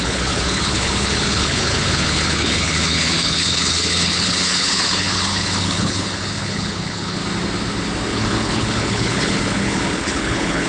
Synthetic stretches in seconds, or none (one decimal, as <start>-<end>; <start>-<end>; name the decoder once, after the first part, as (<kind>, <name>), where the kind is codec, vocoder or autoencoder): 0.0-7.2 (codec, HILCodec); 8.1-10.7